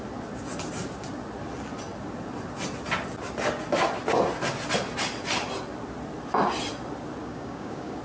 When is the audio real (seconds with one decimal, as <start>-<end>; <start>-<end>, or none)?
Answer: 0.0-7.2